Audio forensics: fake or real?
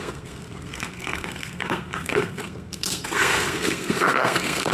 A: fake